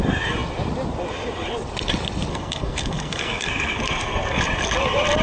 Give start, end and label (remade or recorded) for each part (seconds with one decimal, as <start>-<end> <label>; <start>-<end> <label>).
0.0-2.3 recorded; 2.3-4.4 remade; 4.4-5.2 recorded